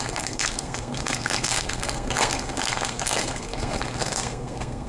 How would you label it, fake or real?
fake